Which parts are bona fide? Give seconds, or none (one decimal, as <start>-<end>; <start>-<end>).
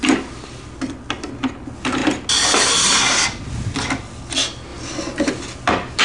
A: 0.0-6.0